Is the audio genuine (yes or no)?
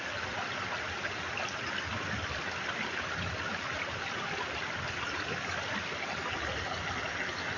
yes